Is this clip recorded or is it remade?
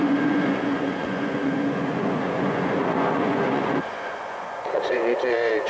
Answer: remade